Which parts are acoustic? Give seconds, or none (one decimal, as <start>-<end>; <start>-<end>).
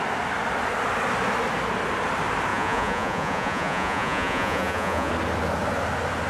0.0-2.5; 5.1-6.3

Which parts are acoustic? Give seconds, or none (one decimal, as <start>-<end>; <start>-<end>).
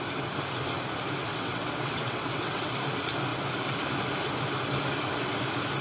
0.0-1.3; 2.7-5.8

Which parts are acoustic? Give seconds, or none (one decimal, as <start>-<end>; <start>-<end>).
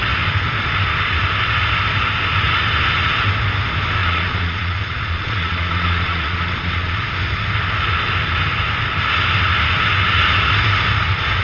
0.0-4.0; 7.0-11.4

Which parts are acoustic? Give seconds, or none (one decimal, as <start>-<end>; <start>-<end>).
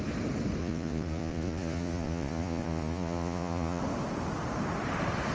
0.0-0.6; 3.8-5.3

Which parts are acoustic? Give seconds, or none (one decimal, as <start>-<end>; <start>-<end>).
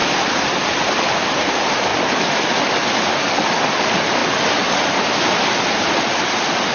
1.9-3.8; 4.2-4.8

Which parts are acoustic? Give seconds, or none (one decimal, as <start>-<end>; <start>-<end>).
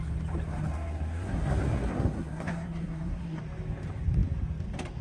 0.0-0.5; 3.4-5.0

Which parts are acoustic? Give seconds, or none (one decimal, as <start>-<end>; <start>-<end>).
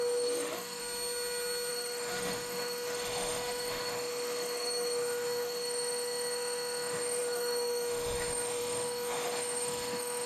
0.8-1.7